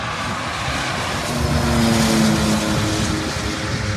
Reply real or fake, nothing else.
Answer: real